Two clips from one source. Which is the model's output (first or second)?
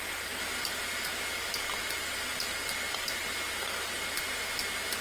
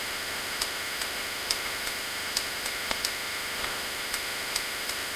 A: second